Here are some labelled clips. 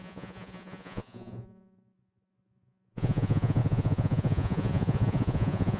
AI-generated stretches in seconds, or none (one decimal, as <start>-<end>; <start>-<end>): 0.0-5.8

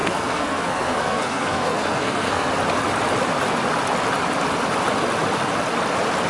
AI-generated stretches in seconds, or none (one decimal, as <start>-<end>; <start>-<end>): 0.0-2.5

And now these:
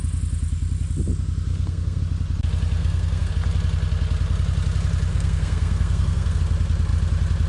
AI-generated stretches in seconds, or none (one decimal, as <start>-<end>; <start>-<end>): 1.5-2.0; 2.8-3.3; 5.1-6.4

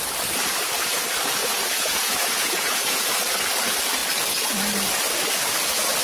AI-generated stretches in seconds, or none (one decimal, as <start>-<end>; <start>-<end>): 1.4-3.1

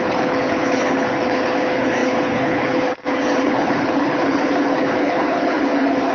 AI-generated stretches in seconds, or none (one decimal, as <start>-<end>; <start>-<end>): 0.0-6.1

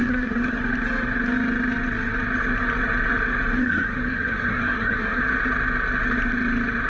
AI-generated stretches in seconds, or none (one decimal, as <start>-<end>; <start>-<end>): 0.0-0.6; 3.6-5.2

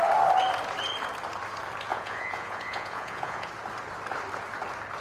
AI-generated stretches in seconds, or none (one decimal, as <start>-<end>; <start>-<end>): 1.9-3.5